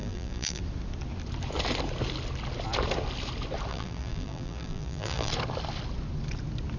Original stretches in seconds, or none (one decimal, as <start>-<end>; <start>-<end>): 0.6-3.7; 5.3-6.8